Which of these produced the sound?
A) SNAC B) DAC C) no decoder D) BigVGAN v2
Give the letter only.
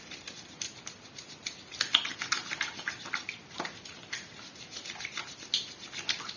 C